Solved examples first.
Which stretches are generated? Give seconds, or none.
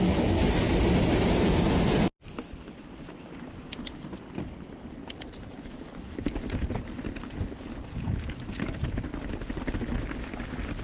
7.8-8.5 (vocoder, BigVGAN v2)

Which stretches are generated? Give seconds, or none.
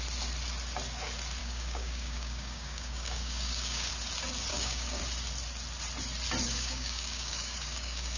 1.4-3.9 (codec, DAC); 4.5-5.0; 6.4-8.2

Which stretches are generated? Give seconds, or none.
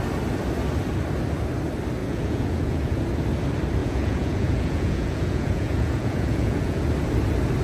2.0-3.0 (vocoder, Vocos); 3.8-6.9